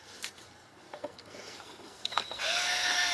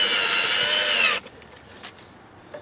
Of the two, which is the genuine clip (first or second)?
second